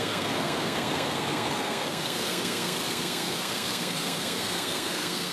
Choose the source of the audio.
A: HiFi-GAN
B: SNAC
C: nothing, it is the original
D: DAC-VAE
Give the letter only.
B